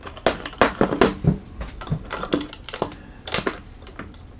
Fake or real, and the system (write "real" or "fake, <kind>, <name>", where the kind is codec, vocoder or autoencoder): real